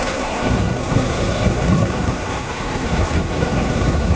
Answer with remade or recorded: remade